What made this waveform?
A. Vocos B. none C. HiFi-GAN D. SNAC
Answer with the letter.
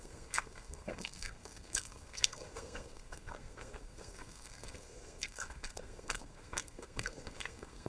D